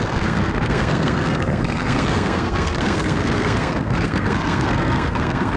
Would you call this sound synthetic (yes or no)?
yes